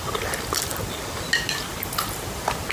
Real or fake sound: real